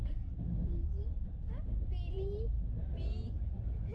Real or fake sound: real